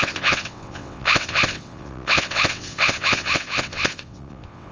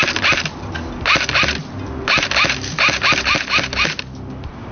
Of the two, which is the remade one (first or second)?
first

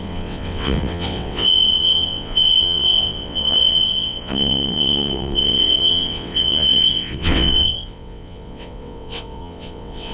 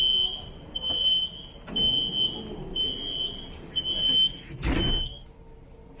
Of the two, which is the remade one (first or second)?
first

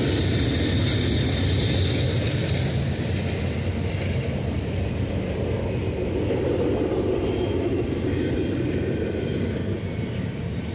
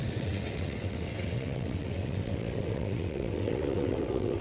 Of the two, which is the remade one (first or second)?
second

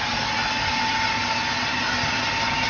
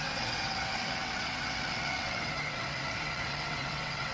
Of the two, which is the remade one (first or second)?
second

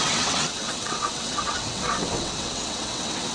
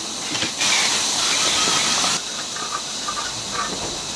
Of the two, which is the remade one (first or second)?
first